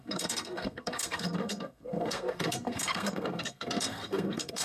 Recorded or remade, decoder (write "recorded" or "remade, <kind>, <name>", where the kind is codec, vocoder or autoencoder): remade, codec, SNAC